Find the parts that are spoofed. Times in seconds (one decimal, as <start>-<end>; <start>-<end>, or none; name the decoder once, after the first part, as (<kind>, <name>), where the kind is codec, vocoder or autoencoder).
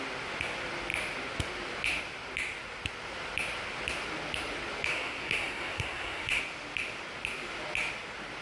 4.9-6.4 (codec, SNAC)